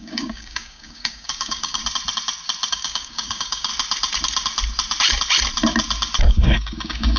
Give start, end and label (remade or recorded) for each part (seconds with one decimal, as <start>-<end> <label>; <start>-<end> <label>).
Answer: 0.0-1.8 remade; 1.8-2.7 recorded; 2.7-3.7 remade; 3.7-6.2 recorded; 6.2-7.2 remade